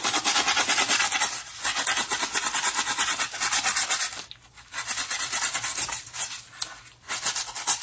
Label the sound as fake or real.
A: real